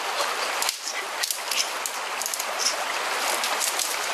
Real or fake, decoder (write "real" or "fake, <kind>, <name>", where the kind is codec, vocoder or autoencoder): real